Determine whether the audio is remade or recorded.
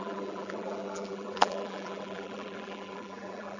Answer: remade